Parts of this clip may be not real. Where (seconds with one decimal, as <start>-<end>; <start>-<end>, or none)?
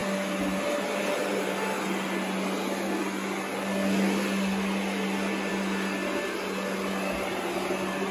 none